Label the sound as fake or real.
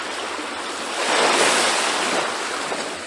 real